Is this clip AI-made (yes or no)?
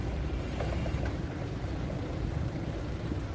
yes